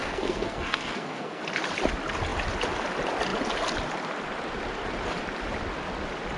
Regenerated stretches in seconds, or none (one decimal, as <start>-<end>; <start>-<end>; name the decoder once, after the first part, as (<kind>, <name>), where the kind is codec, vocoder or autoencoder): 0.0-1.4 (codec, SNAC)